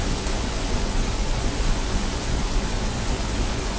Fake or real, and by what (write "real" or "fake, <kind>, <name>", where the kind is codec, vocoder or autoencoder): fake, vocoder, Vocos